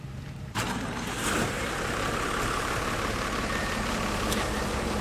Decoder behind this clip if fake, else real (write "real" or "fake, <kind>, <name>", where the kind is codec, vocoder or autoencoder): fake, vocoder, BigVGAN v2